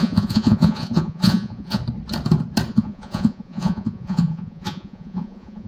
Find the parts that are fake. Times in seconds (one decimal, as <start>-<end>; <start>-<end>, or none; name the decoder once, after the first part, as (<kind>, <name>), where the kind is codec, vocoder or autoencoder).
0.0-1.8 (vocoder, Vocos); 2.7-5.7